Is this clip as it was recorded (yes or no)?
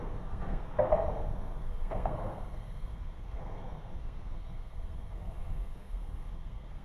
no